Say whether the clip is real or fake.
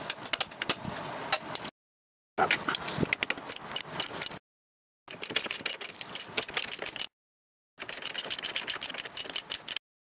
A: real